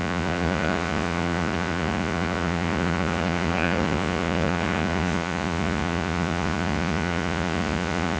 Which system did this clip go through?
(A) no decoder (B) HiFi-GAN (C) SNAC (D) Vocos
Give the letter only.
D